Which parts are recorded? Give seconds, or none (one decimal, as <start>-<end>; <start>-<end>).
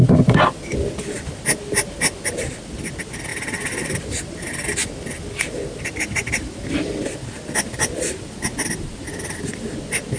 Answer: 0.0-3.3; 4.0-10.2